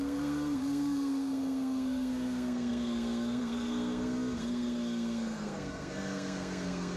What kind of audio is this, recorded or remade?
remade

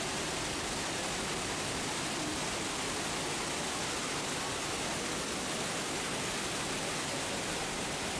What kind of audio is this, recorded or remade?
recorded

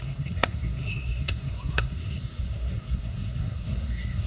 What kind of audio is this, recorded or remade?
remade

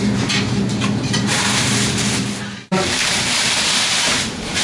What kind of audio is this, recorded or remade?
remade